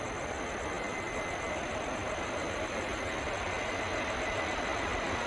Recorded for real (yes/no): yes